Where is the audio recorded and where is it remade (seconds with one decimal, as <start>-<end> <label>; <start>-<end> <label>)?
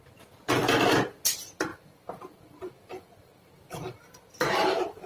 0.0-1.7 recorded; 1.7-5.1 remade